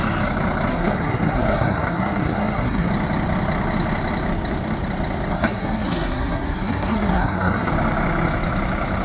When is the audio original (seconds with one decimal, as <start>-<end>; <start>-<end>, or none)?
0.0-0.7; 2.9-5.3; 7.7-9.0